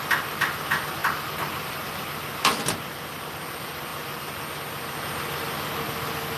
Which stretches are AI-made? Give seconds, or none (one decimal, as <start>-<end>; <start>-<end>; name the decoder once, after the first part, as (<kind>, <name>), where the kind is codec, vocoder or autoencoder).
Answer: none